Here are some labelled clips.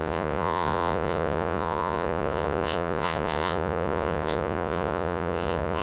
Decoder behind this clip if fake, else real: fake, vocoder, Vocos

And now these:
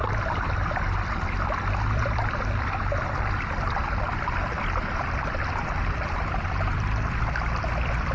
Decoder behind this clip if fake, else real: fake, vocoder, BigVGAN v2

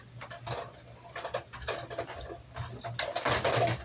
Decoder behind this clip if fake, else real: real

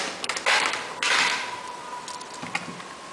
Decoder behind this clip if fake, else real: real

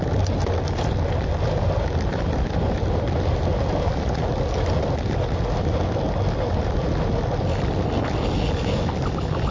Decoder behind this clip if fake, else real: real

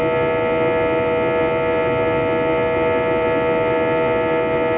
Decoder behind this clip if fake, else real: real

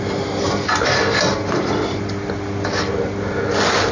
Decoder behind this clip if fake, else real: real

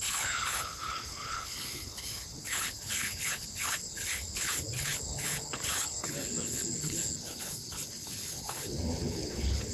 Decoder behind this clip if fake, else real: fake, codec, HILCodec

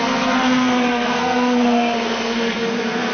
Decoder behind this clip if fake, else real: fake, codec, SNAC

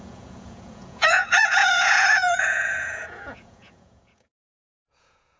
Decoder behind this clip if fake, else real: fake, vocoder, Vocos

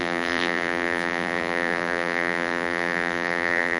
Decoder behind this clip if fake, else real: fake, vocoder, BigVGAN v2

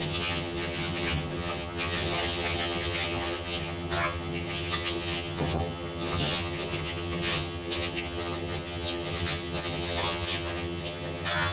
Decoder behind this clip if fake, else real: fake, vocoder, HiFi-GAN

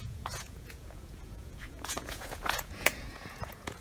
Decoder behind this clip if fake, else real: fake, vocoder, Vocos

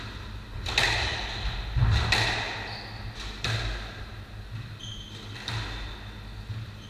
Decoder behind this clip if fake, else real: real